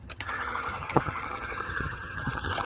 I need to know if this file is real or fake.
fake